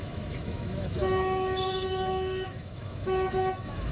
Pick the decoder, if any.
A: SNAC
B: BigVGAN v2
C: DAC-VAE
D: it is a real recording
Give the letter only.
C